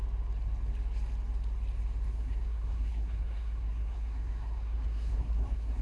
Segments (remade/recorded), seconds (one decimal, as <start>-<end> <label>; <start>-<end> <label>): 0.0-2.1 recorded; 2.1-5.8 remade